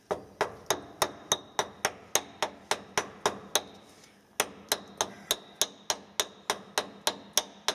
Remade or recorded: recorded